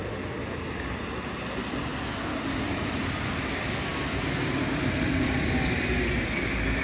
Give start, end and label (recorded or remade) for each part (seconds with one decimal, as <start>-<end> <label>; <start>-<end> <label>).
0.0-6.8 recorded